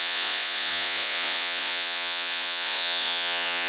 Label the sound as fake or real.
fake